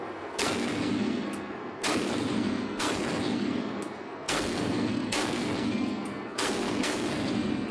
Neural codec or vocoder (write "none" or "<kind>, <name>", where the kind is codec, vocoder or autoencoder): codec, SNAC